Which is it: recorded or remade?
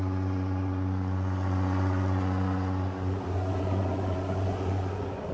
remade